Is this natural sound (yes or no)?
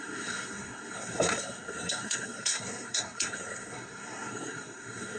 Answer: no